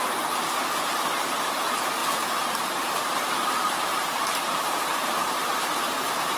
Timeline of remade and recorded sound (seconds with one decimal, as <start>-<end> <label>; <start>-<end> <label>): 0.0-2.0 recorded; 2.0-5.8 remade; 5.8-6.4 recorded